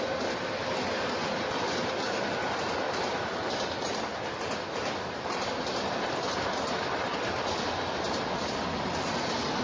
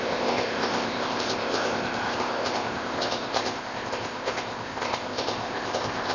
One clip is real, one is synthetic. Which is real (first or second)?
first